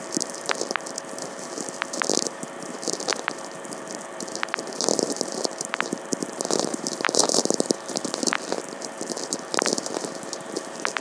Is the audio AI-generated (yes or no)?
yes